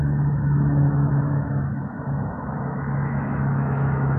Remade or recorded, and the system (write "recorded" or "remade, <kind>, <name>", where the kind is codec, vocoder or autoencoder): remade, autoencoder, DAC-VAE